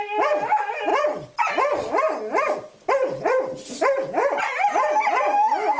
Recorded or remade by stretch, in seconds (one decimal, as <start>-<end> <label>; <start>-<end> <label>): 0.0-5.8 recorded